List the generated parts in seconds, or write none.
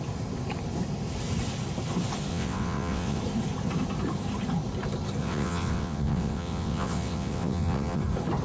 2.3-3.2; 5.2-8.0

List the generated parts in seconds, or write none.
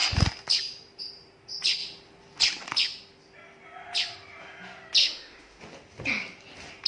5.0-5.6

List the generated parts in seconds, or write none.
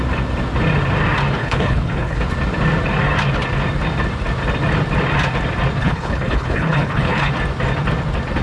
1.4-2.2; 5.8-7.3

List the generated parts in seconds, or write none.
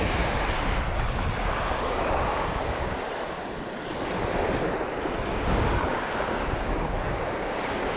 1.4-2.9; 5.3-8.0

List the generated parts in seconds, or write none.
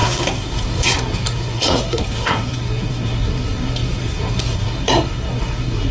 0.0-5.9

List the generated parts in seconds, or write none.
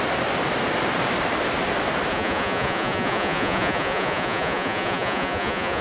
2.1-5.8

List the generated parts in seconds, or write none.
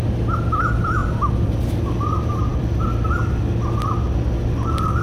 0.0-5.0